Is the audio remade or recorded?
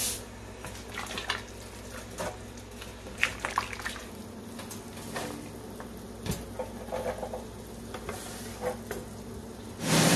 recorded